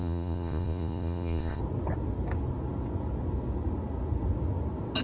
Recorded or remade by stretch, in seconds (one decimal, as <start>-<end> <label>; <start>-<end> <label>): 0.0-1.6 remade; 1.6-5.0 recorded